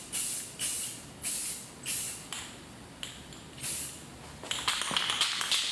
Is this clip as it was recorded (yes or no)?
yes